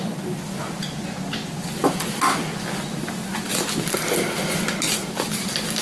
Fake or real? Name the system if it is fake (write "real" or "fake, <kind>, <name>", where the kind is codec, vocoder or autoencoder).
real